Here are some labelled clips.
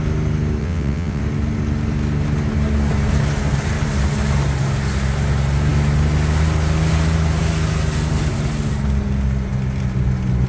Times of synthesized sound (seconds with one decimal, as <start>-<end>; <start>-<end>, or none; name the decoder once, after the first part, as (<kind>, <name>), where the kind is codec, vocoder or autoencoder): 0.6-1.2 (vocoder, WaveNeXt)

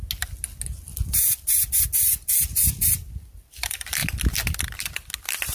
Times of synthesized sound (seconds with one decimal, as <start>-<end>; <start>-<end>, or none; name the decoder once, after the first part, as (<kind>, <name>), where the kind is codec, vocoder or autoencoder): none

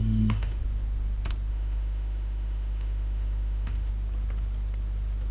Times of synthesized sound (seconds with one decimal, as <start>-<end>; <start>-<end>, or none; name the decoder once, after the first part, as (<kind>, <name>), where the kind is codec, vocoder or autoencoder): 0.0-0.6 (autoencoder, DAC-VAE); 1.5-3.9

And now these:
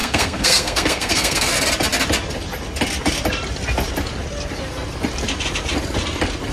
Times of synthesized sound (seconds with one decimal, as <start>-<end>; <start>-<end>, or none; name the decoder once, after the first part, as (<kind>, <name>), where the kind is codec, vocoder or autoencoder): 0.0-1.5 (codec, SNAC)